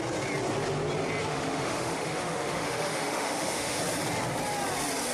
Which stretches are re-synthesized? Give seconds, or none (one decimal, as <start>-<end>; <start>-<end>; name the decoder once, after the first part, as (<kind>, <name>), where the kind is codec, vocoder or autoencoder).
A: 1.3-3.8 (autoencoder, DAC-VAE)

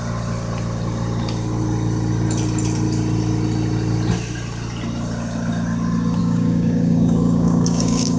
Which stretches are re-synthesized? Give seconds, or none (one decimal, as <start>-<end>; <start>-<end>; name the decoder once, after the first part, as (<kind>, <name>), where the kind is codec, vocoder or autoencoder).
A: 6.2-8.2 (codec, DAC)

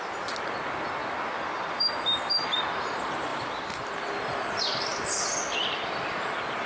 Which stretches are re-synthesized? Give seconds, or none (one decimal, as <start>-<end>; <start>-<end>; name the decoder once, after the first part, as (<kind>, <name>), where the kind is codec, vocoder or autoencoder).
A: 3.3-3.8 (vocoder, BigVGAN v2)

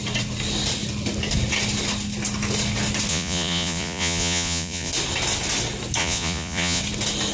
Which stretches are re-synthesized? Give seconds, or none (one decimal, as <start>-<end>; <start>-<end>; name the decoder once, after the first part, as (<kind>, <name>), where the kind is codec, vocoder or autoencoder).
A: 3.1-4.9 (vocoder, Vocos); 6.0-6.8

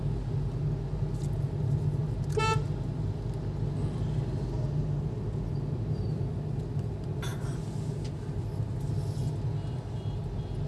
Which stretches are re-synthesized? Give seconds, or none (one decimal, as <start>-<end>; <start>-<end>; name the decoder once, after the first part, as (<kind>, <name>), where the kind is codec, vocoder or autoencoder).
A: none